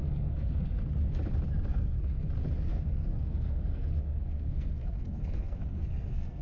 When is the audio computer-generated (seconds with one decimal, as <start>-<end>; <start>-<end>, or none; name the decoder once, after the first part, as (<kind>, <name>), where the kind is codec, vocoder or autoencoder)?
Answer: 0.0-0.8 (codec, SNAC); 1.7-2.3; 2.7-6.4